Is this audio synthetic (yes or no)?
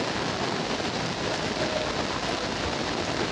no